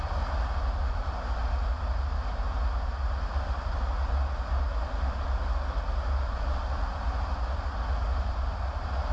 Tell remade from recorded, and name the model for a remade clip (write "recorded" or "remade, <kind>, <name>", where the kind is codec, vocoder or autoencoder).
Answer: recorded